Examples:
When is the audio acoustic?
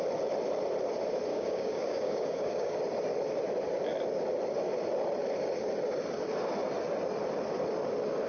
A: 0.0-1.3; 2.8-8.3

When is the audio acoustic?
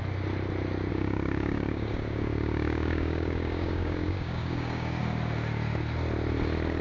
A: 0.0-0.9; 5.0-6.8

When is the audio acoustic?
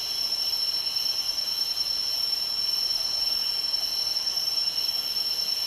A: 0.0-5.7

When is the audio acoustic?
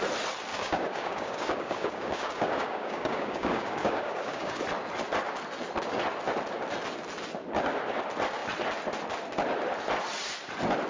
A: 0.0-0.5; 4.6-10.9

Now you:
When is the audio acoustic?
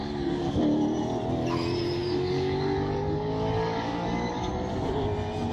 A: 0.6-2.0; 4.5-5.5